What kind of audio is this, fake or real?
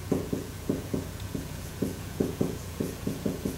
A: fake